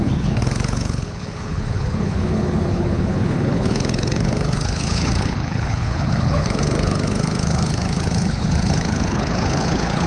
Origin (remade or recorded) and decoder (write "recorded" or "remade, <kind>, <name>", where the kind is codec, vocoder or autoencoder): remade, codec, HILCodec